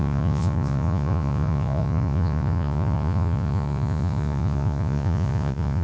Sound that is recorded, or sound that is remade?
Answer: remade